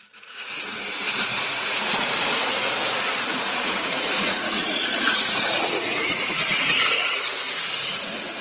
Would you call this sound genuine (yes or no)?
no